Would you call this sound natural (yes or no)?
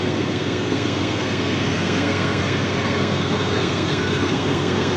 no